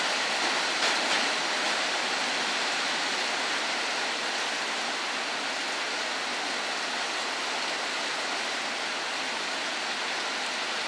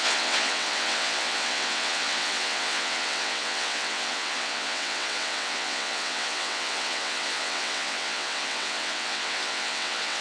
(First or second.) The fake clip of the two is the second